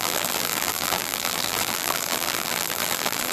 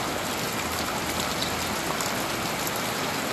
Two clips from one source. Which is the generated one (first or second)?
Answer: first